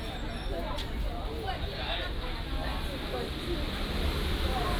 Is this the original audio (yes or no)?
yes